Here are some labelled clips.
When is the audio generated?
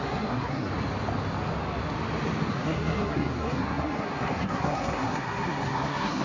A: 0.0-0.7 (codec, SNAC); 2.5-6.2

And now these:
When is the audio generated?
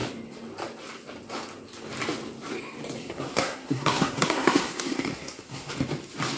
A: 3.0-5.7 (codec, SNAC)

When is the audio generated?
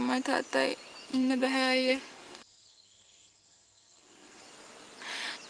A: 1.1-4.4 (codec, SNAC)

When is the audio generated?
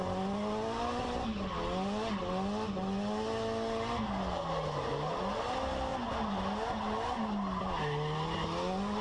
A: none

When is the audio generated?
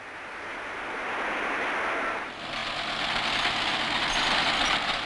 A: none